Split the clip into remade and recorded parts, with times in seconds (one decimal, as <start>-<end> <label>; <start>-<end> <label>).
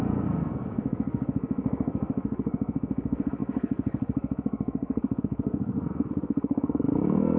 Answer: 0.0-7.4 remade